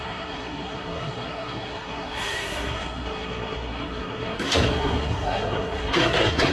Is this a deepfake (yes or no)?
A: yes